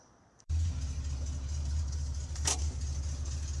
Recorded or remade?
remade